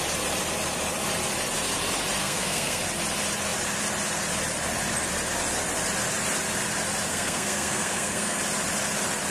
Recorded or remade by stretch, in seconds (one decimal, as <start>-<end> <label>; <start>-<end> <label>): 0.0-2.2 recorded; 2.2-2.8 remade; 2.8-7.1 recorded; 7.1-8.4 remade; 8.4-9.3 recorded